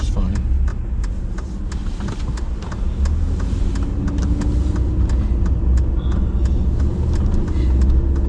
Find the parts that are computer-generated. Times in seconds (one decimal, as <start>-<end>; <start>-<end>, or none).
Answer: none

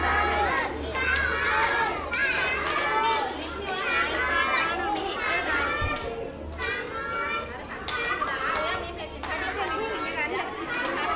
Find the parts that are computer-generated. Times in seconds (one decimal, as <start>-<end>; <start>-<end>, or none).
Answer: none

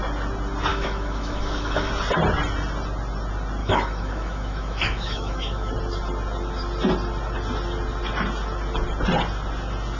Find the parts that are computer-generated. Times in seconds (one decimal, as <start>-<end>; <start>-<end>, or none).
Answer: 0.7-1.9; 3.6-5.7

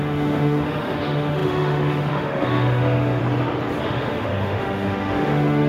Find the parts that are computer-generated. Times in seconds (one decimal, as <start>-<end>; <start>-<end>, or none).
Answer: 0.0-3.2; 3.8-5.7

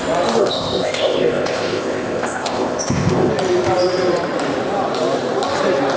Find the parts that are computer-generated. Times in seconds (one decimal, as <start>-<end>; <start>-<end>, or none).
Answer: 0.4-3.3

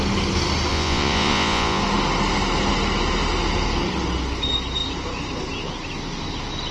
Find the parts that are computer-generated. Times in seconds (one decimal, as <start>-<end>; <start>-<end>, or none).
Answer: 0.7-1.8